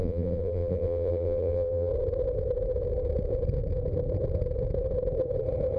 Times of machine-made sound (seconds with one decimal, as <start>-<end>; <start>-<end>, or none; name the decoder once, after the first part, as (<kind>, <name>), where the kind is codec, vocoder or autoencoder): 0.0-1.9 (vocoder, BigVGAN v2)

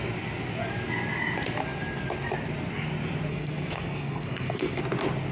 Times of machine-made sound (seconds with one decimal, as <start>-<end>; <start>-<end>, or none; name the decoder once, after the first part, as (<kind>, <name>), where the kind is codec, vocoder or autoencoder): 3.3-4.8 (codec, SNAC)

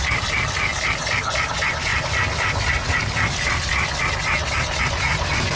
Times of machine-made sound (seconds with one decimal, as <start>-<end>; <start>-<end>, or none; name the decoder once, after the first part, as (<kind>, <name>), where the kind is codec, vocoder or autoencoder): none

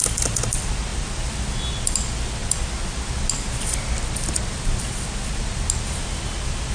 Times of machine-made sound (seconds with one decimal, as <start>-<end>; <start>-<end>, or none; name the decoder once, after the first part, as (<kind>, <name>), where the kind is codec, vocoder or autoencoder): 0.9-1.4 (vocoder, BigVGAN v2)

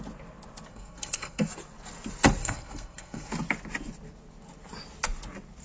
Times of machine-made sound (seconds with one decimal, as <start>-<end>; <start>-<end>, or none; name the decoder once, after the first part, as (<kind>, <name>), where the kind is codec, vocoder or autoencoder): 0.7-1.5 (codec, SNAC); 2.4-3.3

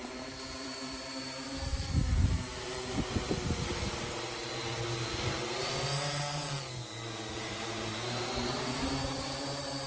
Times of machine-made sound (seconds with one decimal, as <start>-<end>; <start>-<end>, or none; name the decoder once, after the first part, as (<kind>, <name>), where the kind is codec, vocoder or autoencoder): 0.0-4.4 (vocoder, BigVGAN v2); 7.3-9.9

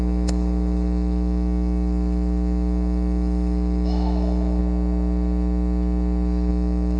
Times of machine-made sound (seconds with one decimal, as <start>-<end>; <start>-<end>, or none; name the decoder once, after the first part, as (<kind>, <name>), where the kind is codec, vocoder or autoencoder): 0.0-4.6 (autoencoder, DAC-VAE); 6.5-7.0